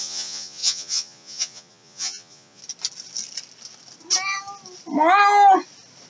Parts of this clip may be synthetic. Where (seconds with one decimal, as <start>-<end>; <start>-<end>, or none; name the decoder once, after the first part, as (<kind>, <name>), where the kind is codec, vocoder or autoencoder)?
0.0-2.6 (vocoder, Vocos)